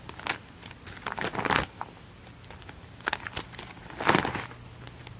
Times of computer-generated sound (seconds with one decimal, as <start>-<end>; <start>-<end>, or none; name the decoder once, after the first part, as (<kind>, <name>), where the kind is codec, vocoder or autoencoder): none